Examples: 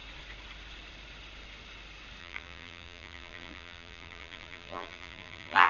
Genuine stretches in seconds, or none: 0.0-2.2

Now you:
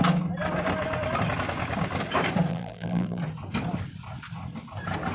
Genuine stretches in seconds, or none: 0.0-2.5; 3.2-5.1

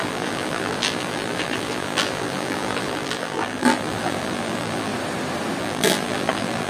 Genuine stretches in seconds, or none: 4.9-5.6